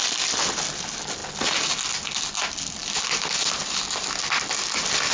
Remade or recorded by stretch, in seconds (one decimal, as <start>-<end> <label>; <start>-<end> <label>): 0.0-5.1 recorded